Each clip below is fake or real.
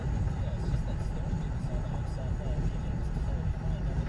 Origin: real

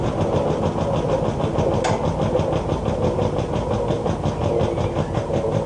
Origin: real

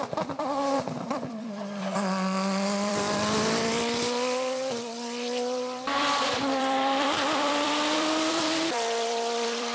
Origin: fake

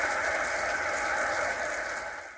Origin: real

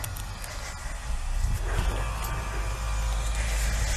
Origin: real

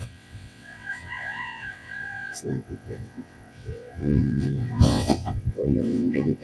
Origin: fake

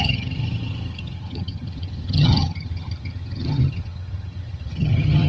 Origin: fake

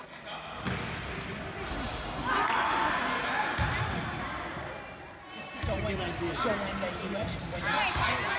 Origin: real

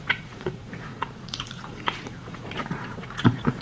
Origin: fake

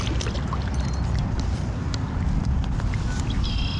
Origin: real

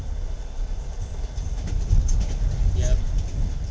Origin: real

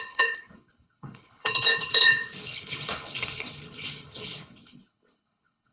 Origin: fake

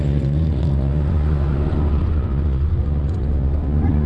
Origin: fake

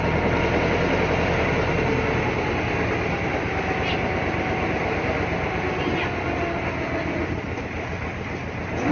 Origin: real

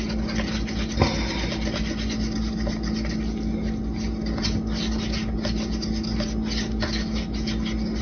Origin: real